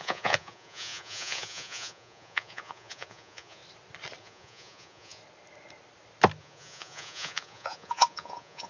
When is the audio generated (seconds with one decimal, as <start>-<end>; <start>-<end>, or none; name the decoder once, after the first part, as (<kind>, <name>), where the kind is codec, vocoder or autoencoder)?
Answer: 0.0-3.6 (vocoder, Vocos); 4.2-5.2; 6.4-8.7